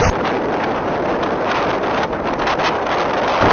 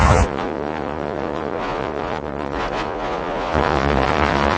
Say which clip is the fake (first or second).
second